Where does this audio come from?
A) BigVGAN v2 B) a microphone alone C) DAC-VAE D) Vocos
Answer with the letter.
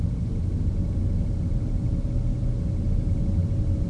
B